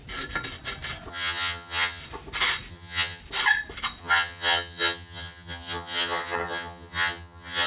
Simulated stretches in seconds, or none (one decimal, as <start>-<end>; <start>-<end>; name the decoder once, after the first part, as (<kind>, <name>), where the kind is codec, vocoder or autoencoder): 1.1-2.0 (vocoder, HiFi-GAN); 2.7-3.2; 4.0-7.7